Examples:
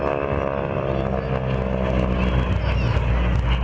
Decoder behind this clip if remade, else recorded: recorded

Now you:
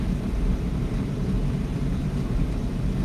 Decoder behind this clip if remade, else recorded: remade, vocoder, BigVGAN v2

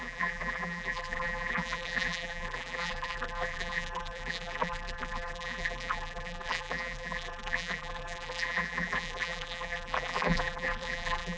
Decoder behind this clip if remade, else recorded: remade, vocoder, BigVGAN v2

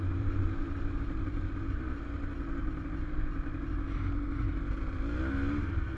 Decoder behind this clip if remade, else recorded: recorded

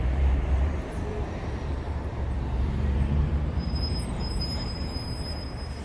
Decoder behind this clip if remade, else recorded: remade, vocoder, BigVGAN v2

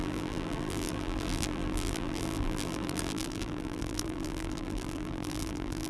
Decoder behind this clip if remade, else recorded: remade, vocoder, BigVGAN v2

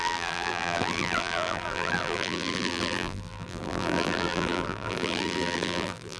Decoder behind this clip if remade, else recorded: remade, vocoder, BigVGAN v2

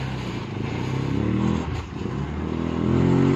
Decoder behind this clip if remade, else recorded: recorded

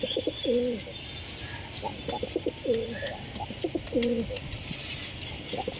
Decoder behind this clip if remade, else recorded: recorded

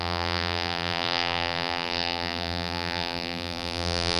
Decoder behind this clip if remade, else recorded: remade, vocoder, BigVGAN v2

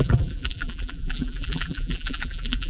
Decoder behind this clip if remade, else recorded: remade, vocoder, BigVGAN v2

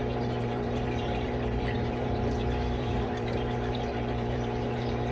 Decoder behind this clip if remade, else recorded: remade, vocoder, BigVGAN v2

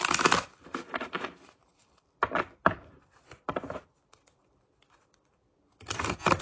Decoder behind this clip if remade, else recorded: remade, vocoder, BigVGAN v2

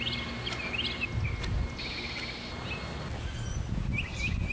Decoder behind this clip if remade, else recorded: recorded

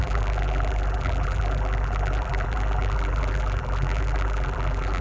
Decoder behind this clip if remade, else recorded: remade, vocoder, BigVGAN v2